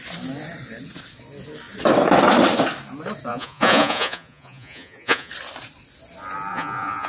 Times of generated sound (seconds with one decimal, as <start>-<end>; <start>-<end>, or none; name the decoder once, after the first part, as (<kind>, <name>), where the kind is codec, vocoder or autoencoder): 3.3-5.3 (vocoder, Vocos); 6.5-7.1